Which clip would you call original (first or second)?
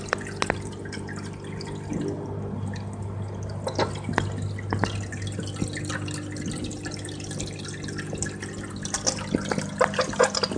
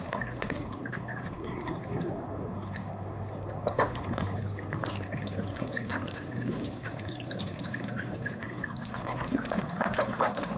first